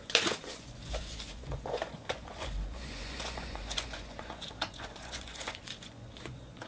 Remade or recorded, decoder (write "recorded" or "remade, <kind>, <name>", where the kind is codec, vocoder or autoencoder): remade, vocoder, Vocos